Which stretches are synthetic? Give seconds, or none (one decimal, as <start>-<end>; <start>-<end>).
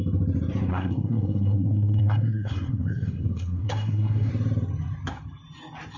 0.7-4.3